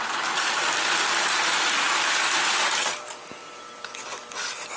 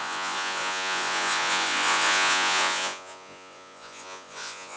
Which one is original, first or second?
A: first